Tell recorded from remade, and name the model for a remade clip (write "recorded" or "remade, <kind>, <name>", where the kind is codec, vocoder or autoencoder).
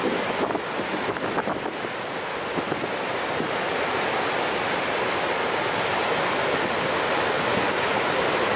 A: recorded